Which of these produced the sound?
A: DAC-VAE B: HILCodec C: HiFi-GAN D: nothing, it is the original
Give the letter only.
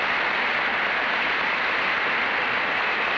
D